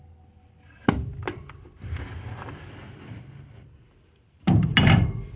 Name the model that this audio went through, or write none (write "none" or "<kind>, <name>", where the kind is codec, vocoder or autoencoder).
none